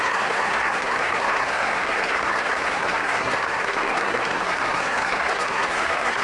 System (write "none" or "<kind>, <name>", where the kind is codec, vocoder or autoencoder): codec, SNAC